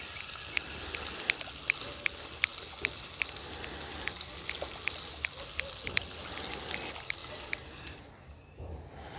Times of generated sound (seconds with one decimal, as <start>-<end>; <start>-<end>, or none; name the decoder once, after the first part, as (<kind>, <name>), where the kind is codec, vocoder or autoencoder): none